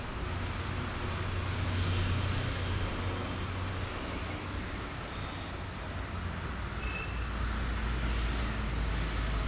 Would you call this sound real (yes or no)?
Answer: yes